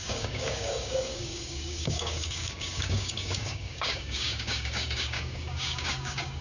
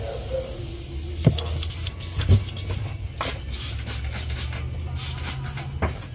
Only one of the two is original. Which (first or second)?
second